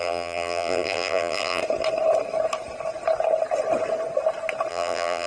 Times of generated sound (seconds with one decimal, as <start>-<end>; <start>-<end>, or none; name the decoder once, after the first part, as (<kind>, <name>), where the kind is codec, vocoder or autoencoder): 0.0-1.6 (vocoder, BigVGAN v2); 4.7-5.3